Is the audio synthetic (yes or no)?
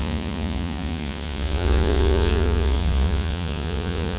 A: yes